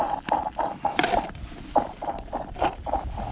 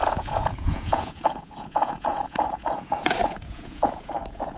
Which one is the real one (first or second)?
first